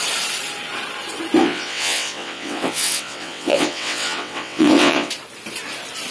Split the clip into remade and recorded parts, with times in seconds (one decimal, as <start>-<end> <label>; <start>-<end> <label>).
0.0-1.4 recorded; 1.4-5.1 remade; 5.1-6.1 recorded